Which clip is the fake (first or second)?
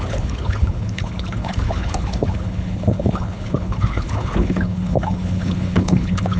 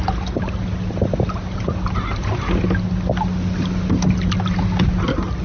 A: first